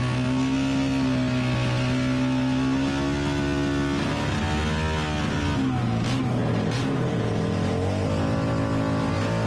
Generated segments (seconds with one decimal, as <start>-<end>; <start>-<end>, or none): 6.4-7.2